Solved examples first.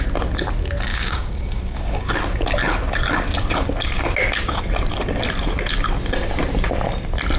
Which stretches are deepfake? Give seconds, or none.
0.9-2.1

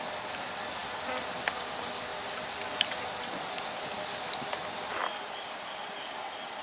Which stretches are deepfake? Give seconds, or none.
none

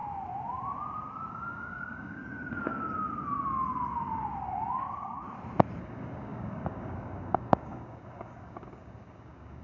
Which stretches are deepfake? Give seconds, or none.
1.3-2.2; 5.8-9.6

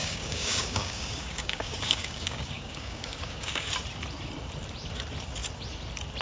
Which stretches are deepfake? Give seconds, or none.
0.0-3.7

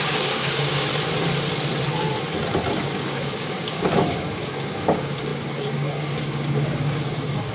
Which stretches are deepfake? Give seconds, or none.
0.0-0.9; 2.7-7.5

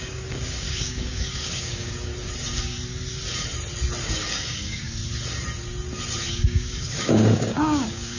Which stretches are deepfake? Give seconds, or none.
0.0-2.1; 4.0-5.0; 6.3-8.2

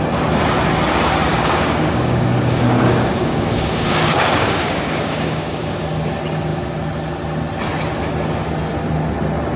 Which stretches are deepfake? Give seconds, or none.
1.3-5.9